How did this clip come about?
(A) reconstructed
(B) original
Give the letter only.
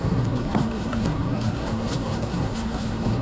A